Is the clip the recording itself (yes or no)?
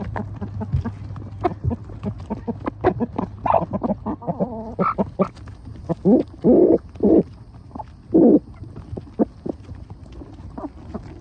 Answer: yes